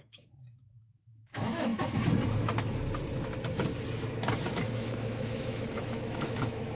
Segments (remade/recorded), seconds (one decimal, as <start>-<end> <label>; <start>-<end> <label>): 0.0-1.7 remade; 1.7-4.7 recorded; 4.7-6.7 remade